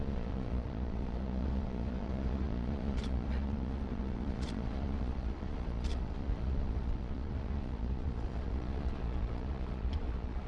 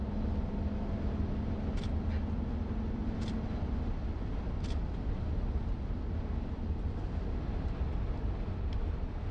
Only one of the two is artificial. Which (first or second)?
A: first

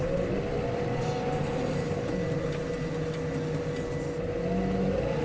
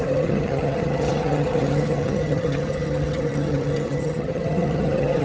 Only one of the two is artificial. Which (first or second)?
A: second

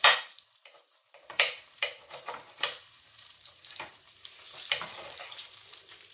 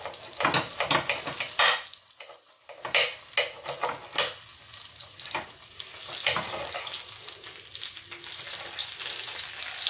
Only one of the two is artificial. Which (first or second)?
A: first